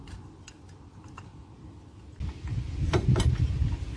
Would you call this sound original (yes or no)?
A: yes